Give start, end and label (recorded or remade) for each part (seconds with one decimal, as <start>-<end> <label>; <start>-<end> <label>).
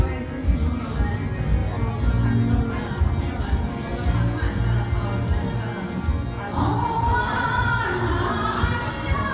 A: 0.0-1.6 remade; 1.6-2.6 recorded; 2.6-3.9 remade; 3.9-6.6 recorded; 6.6-9.3 remade